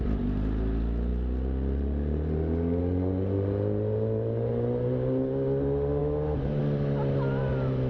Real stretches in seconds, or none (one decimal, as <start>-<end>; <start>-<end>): 0.0-6.0; 6.6-7.9